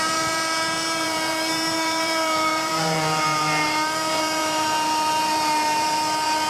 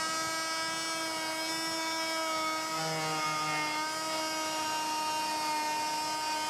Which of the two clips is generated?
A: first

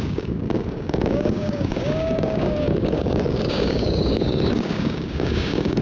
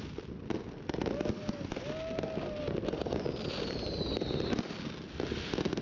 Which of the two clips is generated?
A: first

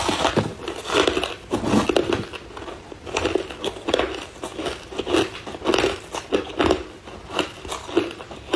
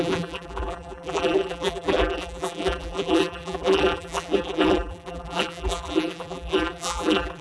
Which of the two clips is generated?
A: second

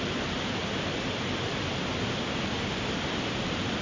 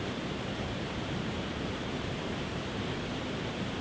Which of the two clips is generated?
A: second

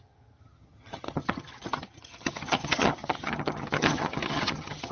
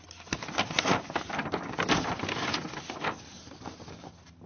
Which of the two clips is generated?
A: first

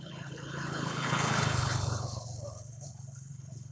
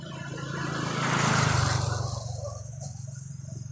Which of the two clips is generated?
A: first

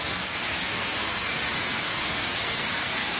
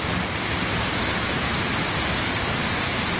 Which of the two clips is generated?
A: first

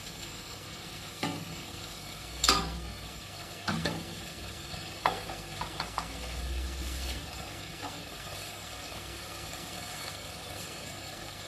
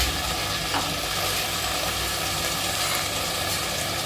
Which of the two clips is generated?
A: first